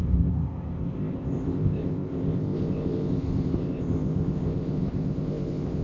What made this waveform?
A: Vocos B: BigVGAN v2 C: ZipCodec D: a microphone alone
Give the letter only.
C